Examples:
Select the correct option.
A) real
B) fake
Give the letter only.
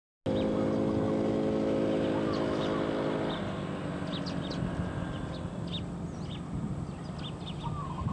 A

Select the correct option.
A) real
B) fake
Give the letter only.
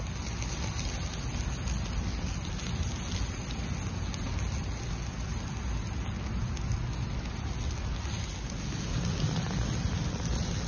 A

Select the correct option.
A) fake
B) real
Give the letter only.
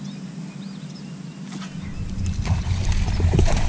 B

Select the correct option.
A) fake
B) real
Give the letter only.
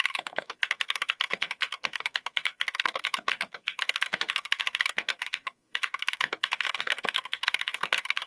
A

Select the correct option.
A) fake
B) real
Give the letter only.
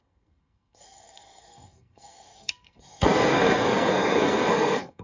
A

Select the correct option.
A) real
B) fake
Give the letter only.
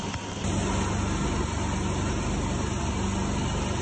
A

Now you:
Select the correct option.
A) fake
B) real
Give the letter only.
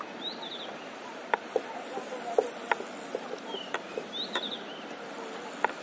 B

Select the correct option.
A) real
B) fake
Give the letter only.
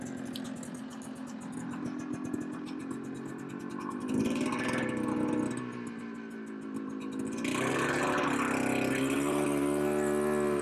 A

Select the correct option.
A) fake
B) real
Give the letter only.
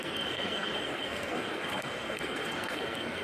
A